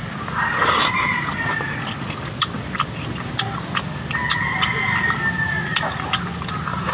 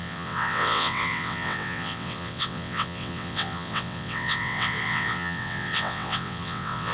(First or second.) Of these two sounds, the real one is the first